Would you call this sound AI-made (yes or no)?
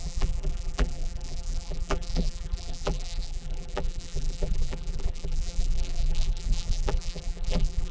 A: yes